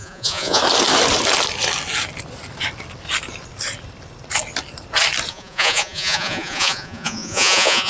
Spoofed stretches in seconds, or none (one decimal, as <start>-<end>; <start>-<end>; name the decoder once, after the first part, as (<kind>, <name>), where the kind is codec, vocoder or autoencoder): 0.0-0.6 (vocoder, Vocos); 5.3-7.9